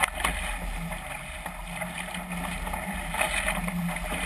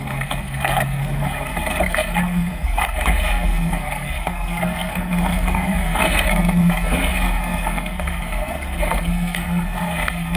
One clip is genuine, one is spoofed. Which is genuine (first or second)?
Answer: first